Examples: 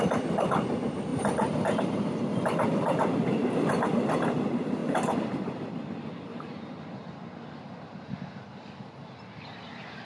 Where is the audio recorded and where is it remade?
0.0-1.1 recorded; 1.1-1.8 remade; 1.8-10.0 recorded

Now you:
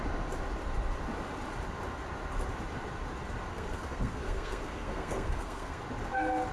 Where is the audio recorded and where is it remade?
0.0-3.5 recorded; 3.5-5.8 remade; 5.8-6.5 recorded

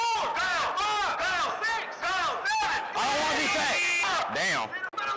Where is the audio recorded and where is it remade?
0.0-5.2 recorded

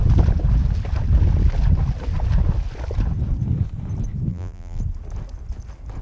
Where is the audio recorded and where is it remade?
0.0-4.3 recorded; 4.3-4.8 remade; 4.8-6.0 recorded

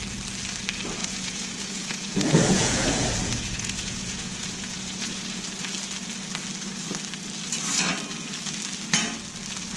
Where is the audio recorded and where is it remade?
0.0-1.0 recorded; 1.0-5.4 remade; 5.4-9.8 recorded

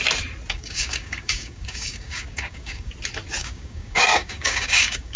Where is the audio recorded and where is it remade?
0.0-0.5 recorded; 0.5-2.9 remade; 2.9-3.4 recorded; 3.4-5.2 remade